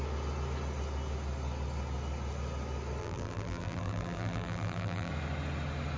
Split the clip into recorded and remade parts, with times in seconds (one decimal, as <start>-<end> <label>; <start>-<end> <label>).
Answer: 0.0-3.0 recorded; 3.0-5.1 remade; 5.1-6.0 recorded